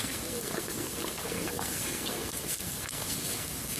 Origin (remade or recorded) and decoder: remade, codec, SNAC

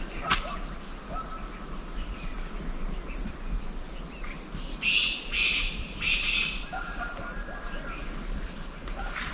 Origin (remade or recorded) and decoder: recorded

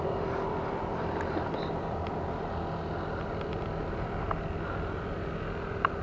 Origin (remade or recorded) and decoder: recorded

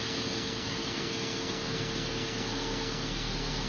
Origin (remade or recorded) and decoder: remade, codec, SNAC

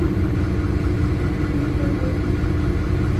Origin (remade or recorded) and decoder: recorded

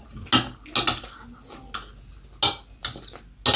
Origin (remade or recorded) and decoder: recorded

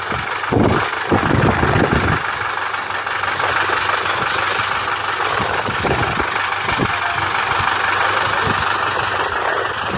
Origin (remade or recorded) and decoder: recorded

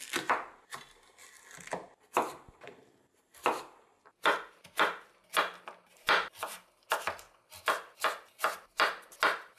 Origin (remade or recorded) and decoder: recorded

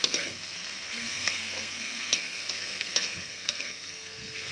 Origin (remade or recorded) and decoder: remade, codec, SNAC